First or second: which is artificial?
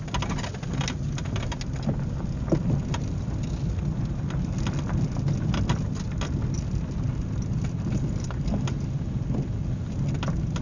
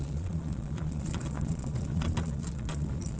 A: second